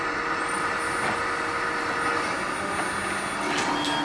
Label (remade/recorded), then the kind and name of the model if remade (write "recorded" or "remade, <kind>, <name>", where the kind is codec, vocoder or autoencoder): recorded